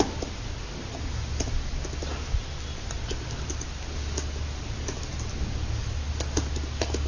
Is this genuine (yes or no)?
yes